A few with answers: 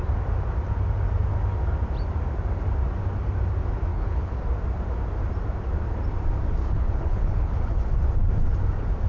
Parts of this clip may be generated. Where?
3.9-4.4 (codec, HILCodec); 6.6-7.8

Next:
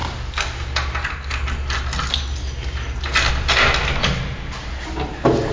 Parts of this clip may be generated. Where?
none

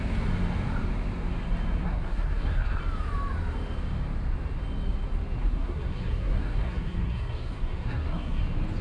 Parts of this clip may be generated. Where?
1.8-2.8 (codec, SNAC); 5.4-8.4

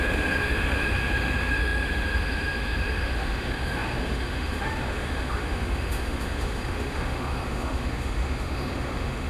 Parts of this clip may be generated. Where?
0.0-9.3 (autoencoder, DAC-VAE)